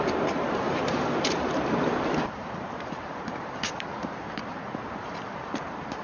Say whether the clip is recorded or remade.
remade